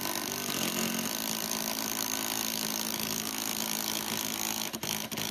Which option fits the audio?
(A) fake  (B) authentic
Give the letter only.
B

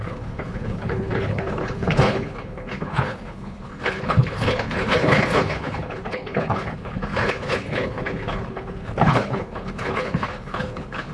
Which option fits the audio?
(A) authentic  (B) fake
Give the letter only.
B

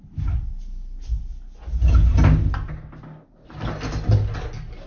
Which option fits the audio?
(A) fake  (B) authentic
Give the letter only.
B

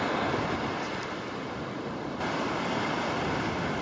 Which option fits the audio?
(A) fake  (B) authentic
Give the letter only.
B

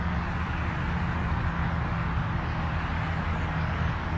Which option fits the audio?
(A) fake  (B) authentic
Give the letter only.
A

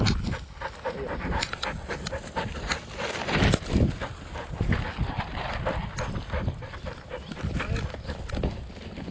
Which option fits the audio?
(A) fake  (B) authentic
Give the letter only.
B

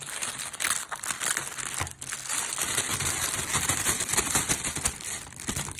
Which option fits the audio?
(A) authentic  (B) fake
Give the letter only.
A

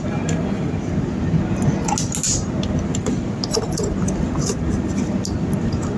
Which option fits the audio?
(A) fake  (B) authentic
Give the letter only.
B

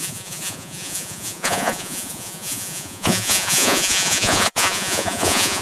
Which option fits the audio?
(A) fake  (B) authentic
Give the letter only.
A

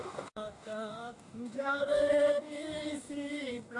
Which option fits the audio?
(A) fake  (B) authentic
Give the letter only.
A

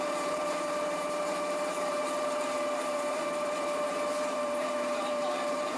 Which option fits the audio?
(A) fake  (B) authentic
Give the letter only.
A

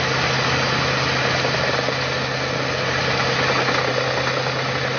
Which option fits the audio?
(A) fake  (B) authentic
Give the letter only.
B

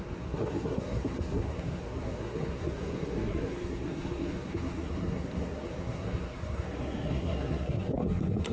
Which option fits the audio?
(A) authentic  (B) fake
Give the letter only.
B